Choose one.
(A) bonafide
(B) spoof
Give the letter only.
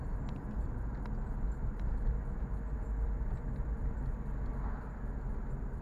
A